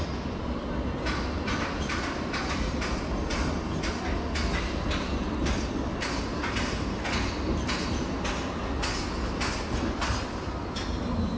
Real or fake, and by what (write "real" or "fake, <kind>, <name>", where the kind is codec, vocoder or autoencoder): real